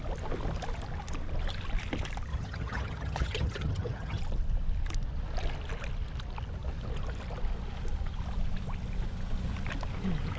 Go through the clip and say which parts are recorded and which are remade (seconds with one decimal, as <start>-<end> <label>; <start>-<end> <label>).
0.0-2.3 recorded; 2.3-4.2 remade; 4.2-10.4 recorded